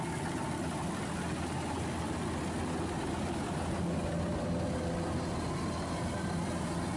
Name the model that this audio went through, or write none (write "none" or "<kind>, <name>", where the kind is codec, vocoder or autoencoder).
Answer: none